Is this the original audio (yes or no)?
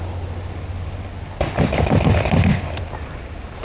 yes